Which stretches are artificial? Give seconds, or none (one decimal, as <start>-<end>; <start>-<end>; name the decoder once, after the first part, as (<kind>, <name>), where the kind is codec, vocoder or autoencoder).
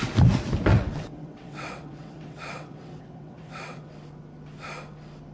0.7-3.9 (vocoder, WaveNeXt)